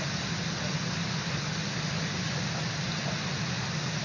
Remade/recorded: recorded